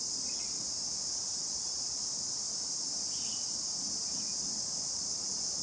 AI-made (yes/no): no